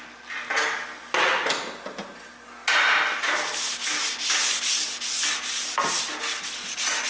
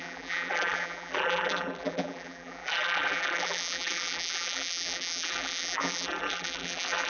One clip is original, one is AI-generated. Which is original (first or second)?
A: first